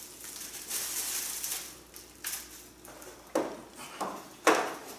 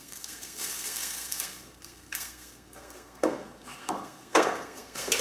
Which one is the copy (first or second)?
second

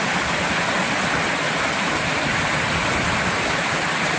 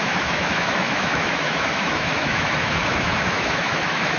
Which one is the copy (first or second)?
second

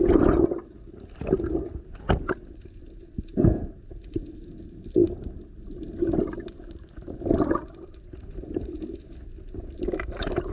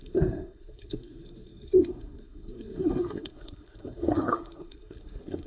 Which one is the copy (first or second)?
second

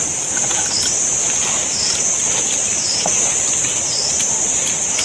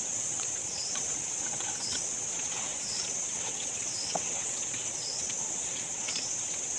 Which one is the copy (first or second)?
second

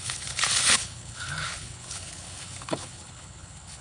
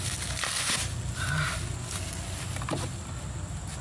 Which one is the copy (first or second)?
first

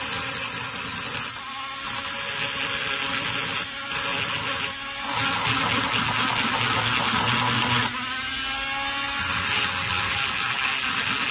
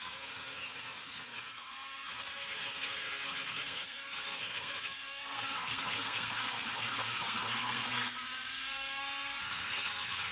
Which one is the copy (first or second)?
second